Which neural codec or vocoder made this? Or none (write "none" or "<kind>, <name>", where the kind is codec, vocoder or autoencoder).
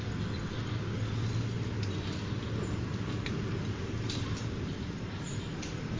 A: none